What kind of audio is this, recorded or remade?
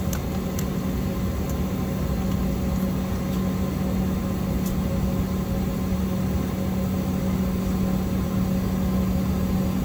recorded